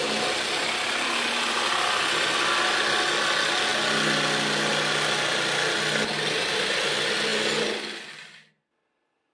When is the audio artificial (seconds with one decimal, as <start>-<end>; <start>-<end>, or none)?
none